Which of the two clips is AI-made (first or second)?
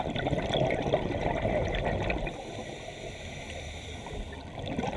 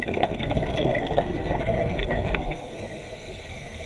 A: second